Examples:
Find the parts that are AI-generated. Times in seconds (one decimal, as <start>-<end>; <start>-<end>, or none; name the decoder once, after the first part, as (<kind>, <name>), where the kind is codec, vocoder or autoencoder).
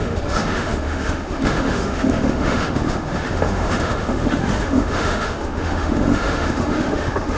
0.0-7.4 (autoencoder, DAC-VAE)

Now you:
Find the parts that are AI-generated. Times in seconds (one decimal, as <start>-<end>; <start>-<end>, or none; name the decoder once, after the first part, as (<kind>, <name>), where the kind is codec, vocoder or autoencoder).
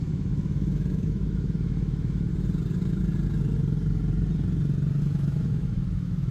0.0-2.3 (autoencoder, DAC-VAE); 5.0-6.3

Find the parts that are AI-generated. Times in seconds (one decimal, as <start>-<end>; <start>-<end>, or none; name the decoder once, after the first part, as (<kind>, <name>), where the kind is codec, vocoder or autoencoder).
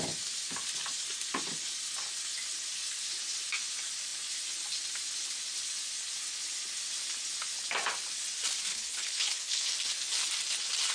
8.7-9.7 (codec, HILCodec)